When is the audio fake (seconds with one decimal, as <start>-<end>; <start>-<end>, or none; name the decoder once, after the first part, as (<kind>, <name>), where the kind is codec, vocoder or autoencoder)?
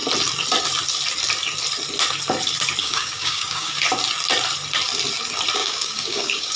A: 2.8-3.8 (codec, DAC); 5.6-6.6